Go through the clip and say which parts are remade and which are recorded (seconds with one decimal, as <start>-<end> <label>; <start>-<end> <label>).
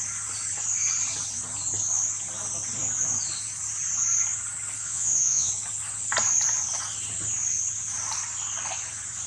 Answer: 0.0-4.8 recorded; 4.8-5.5 remade; 5.5-9.3 recorded